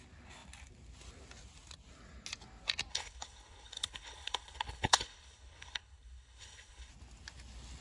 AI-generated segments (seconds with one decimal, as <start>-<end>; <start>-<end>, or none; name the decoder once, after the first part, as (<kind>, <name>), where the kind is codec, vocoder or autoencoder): 2.9-6.9 (codec, HILCodec)